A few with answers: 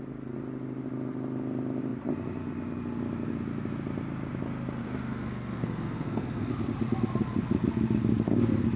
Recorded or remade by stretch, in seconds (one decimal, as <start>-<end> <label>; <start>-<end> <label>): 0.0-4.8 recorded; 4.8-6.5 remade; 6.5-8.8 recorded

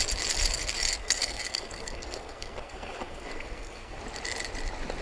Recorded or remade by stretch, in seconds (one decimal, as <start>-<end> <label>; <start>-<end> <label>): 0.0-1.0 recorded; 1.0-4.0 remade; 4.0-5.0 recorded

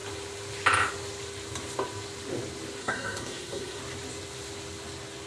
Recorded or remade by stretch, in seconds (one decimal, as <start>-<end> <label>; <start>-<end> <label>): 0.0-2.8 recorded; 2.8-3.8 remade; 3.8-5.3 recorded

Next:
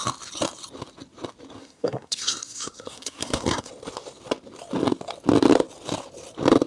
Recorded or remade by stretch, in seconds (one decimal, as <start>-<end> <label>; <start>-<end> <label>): 0.0-1.6 recorded; 1.6-3.7 remade; 3.7-6.7 recorded